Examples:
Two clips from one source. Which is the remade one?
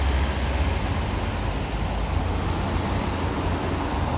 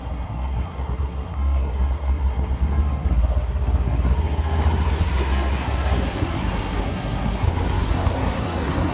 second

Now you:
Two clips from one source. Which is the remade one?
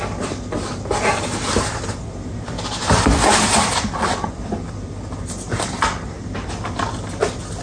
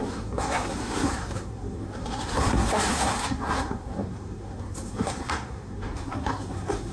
second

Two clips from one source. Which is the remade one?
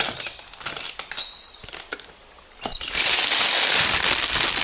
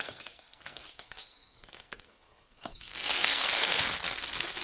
second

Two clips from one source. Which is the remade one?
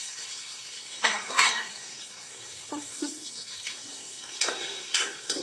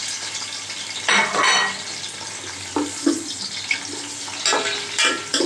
first